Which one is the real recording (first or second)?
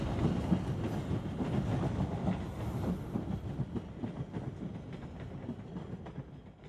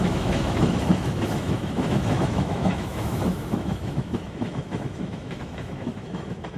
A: first